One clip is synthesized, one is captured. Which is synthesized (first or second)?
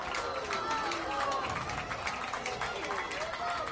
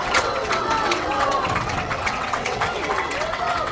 second